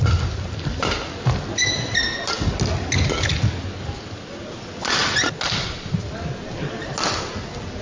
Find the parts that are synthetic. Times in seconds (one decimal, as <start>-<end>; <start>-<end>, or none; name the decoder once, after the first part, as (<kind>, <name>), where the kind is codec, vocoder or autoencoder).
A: none